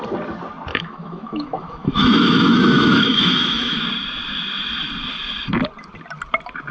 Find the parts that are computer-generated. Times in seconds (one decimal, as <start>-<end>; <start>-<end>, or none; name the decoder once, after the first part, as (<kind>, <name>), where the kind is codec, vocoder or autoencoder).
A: 0.7-3.8 (autoencoder, DAC-VAE)

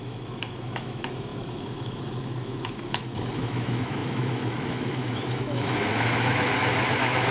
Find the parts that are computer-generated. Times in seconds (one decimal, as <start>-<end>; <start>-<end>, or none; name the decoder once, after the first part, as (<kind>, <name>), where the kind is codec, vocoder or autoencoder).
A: 0.0-7.3 (autoencoder, DAC-VAE)